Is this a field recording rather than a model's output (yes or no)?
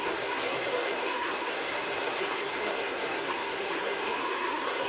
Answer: no